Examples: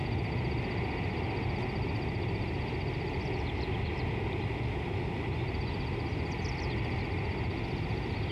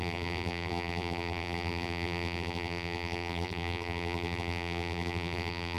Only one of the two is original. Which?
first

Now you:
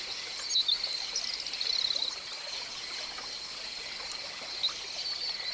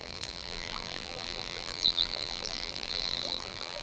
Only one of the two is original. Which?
first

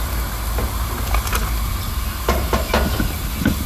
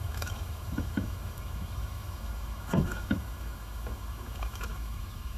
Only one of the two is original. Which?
first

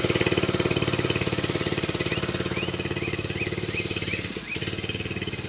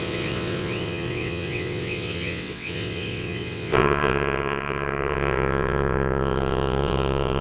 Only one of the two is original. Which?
first